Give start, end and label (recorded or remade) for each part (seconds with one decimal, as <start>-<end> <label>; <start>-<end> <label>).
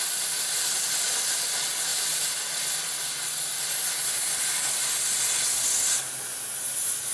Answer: 0.0-7.1 recorded